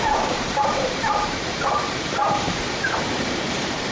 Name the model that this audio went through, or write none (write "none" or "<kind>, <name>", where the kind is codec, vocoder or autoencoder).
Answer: vocoder, BigVGAN v2